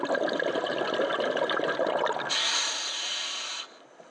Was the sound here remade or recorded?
recorded